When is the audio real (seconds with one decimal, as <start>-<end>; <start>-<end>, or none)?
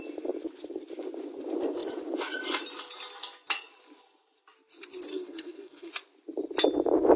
0.0-5.1; 5.9-7.2